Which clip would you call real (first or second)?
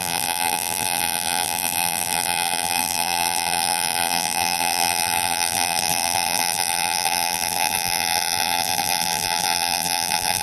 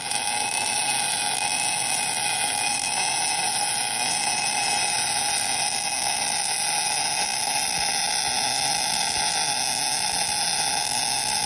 second